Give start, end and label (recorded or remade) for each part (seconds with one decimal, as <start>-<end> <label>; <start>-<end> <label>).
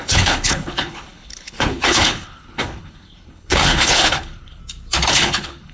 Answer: 0.0-4.6 remade; 4.6-5.1 recorded; 5.1-5.7 remade